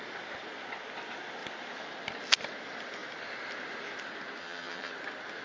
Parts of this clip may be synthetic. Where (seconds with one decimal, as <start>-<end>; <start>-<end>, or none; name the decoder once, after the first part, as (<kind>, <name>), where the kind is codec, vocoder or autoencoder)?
4.4-4.9 (vocoder, HiFi-GAN)